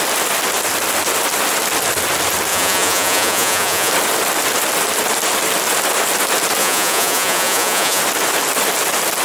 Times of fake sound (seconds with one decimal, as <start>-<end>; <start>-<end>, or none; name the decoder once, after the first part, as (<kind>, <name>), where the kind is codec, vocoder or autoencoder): 2.5-3.9 (vocoder, Vocos); 6.6-8.0